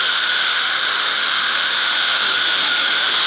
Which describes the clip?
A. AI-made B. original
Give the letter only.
A